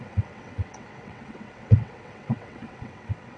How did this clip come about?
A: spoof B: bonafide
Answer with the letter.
A